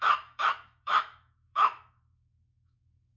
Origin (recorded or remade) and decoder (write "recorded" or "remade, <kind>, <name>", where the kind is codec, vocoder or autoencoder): remade, autoencoder, DAC-VAE